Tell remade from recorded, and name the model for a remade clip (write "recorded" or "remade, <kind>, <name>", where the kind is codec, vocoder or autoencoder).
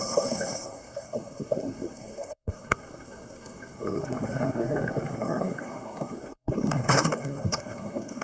remade, codec, SNAC